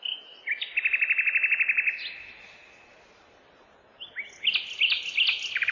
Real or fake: real